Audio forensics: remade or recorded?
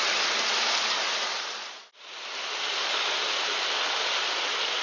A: recorded